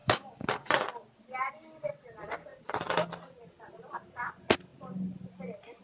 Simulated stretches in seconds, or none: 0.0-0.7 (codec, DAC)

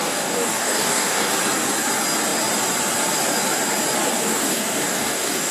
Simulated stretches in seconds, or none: 0.0-1.3 (codec, DAC); 4.1-5.5

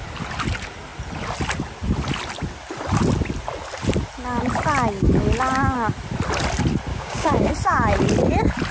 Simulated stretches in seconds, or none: 6.9-7.5 (codec, DAC)

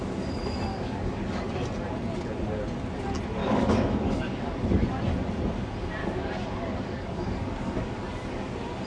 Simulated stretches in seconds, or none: 0.7-1.4 (codec, DAC); 3.4-5.0; 6.0-8.5

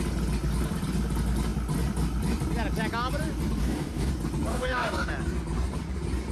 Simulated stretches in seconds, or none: 3.6-4.1 (codec, DAC); 4.5-5.1

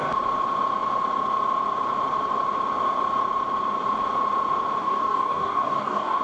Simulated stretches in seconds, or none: 4.8-6.2 (codec, DAC)

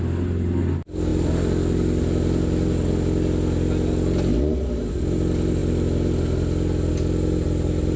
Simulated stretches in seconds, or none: none